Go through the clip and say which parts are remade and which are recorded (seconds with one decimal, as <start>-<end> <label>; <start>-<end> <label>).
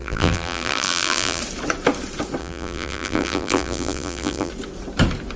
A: 0.0-1.4 remade; 1.4-2.4 recorded; 2.4-4.5 remade; 4.5-5.4 recorded